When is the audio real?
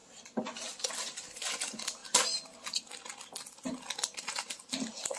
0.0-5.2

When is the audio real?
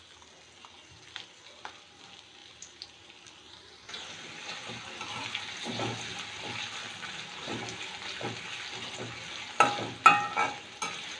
0.0-2.4; 3.9-11.2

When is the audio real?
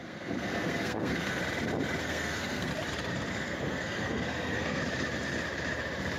1.4-2.0; 2.7-3.3; 4.8-6.2